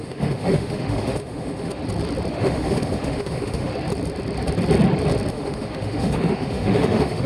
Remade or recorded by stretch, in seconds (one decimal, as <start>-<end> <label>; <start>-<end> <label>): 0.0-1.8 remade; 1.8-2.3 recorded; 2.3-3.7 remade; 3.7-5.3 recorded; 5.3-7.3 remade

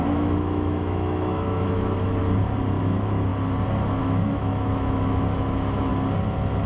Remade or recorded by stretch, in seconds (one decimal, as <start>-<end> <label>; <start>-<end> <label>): 0.0-2.2 remade; 2.2-2.8 recorded; 2.8-3.3 remade; 3.3-4.0 recorded; 4.0-5.9 remade; 5.9-6.7 recorded

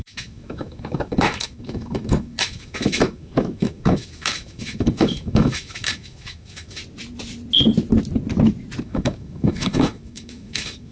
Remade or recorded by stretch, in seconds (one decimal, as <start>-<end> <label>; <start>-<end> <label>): 0.0-6.8 remade; 6.8-8.8 recorded; 8.8-10.9 remade

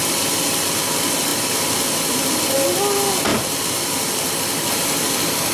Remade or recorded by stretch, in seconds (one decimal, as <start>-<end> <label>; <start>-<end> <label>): 0.0-5.5 recorded